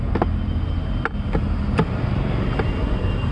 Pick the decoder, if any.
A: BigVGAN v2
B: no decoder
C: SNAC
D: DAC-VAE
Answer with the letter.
B